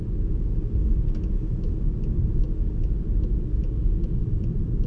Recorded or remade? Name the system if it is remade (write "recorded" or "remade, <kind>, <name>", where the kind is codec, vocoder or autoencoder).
recorded